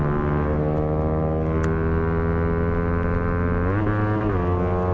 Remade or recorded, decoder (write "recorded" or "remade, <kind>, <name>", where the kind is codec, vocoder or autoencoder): recorded